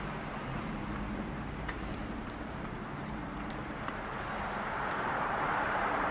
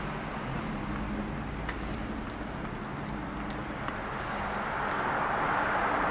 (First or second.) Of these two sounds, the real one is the second